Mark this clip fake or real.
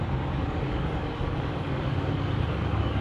fake